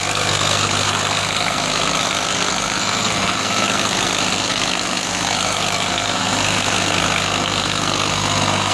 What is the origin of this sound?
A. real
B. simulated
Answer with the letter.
B